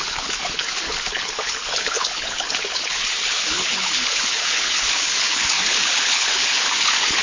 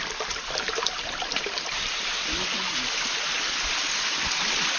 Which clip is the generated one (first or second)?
first